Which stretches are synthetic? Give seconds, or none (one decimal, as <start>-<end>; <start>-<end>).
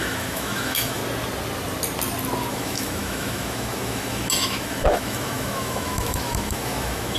0.0-1.0; 2.5-7.2